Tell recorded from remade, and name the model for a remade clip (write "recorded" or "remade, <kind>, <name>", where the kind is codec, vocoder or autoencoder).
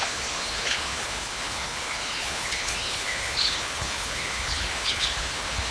remade, codec, HILCodec